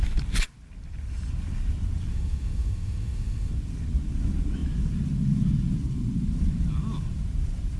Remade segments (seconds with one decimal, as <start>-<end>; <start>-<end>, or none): 2.1-3.5